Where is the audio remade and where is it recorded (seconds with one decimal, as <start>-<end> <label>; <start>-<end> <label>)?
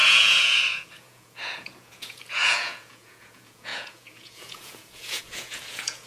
0.0-6.1 remade